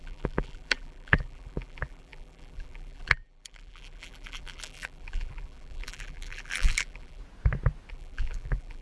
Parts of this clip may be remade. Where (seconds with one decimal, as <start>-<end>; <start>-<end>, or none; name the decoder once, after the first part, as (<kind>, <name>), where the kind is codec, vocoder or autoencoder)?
0.0-7.2 (vocoder, BigVGAN v2); 7.9-8.8

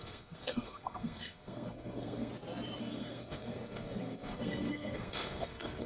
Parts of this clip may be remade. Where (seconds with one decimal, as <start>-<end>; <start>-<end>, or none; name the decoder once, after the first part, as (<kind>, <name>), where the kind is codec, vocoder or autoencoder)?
0.0-2.3 (codec, SNAC); 2.8-5.9

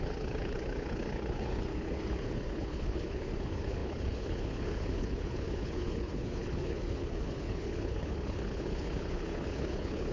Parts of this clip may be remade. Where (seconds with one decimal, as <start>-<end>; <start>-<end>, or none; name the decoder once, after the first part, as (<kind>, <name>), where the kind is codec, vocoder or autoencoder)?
0.0-10.1 (codec, HILCodec)

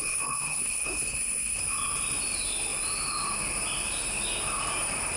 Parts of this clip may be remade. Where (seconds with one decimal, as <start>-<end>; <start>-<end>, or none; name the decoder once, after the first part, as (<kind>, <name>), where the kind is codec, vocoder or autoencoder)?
0.0-1.6 (codec, SNAC)

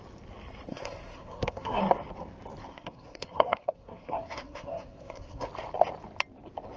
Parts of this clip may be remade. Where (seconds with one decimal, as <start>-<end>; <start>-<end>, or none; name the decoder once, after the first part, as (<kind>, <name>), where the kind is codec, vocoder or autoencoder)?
0.7-1.8 (codec, SNAC); 2.7-5.5

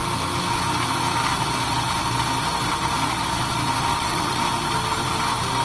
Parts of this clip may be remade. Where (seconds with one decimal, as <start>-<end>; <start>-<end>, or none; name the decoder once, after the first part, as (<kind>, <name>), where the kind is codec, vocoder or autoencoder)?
3.9-4.4 (vocoder, WaveNeXt)